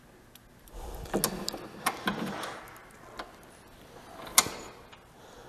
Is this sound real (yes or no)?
yes